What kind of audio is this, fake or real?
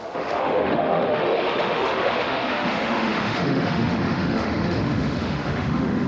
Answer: fake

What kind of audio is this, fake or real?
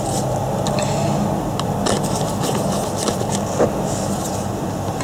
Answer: real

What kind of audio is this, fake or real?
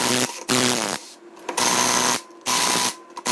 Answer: real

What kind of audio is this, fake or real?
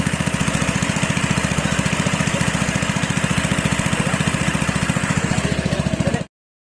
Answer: real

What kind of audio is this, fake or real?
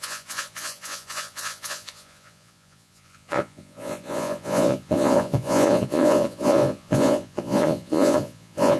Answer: fake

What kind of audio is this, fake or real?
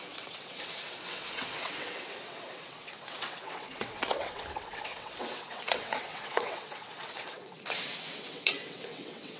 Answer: fake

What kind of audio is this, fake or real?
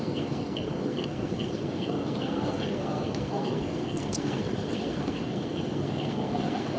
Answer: fake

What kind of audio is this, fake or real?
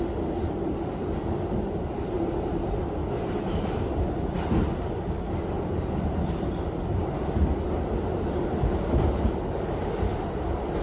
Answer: real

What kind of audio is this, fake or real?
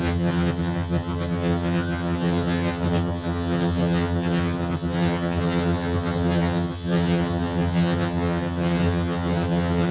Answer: fake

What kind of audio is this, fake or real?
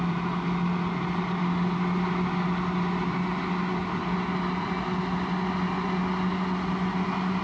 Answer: real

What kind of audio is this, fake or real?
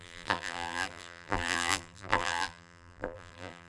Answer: fake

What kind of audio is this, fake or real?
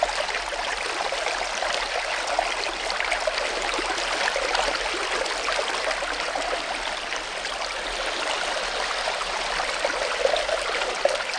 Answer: real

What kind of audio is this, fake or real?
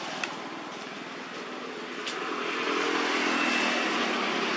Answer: real